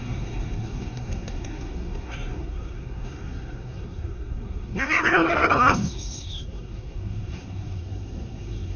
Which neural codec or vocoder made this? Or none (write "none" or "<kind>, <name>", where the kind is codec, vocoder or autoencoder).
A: codec, SNAC